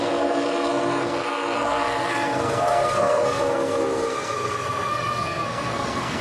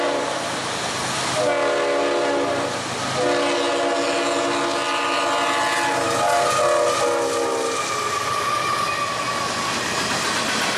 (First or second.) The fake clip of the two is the first